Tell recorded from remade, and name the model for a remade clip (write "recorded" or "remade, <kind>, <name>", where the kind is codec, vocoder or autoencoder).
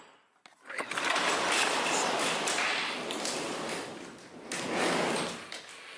recorded